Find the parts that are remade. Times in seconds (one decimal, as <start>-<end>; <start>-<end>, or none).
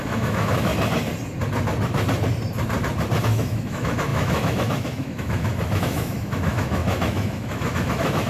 0.0-0.7; 3.2-8.3